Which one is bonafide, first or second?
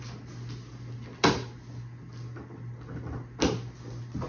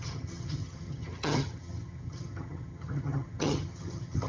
first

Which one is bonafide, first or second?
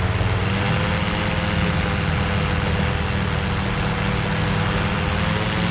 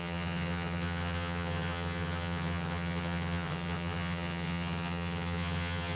first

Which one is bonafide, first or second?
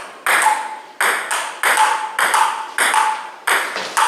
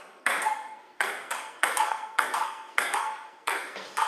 first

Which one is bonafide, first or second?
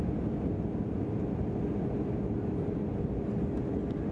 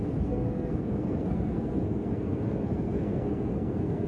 first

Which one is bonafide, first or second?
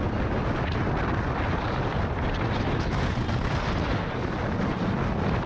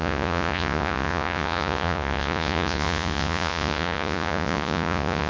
first